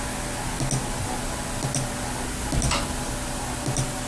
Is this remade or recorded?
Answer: recorded